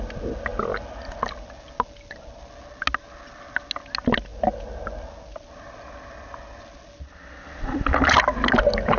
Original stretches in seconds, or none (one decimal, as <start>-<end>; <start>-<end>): 0.0-9.0